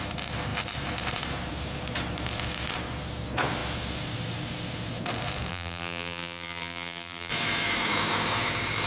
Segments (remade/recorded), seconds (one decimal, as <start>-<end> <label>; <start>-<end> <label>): 0.0-5.5 recorded; 5.5-7.3 remade; 7.3-8.9 recorded